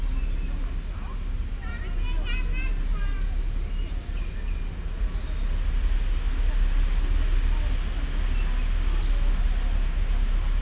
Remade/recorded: recorded